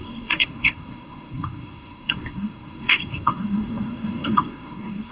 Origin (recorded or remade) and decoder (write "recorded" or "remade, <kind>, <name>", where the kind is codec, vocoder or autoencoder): remade, codec, SNAC